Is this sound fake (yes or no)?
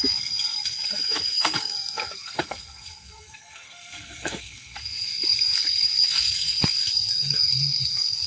yes